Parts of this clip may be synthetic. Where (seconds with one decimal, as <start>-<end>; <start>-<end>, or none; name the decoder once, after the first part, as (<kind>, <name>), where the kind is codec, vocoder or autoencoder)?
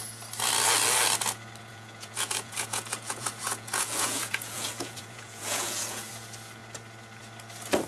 1.7-6.1 (vocoder, Vocos)